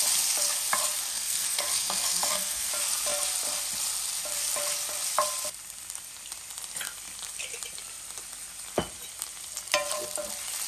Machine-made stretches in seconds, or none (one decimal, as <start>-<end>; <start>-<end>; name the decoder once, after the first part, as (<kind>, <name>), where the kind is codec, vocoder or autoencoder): 1.1-2.7 (codec, SNAC)